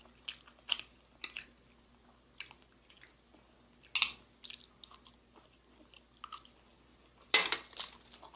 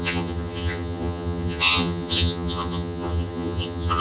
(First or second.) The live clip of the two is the first